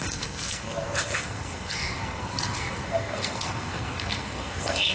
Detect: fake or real fake